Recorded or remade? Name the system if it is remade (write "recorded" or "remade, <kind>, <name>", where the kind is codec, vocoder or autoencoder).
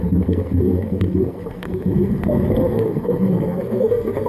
remade, codec, SNAC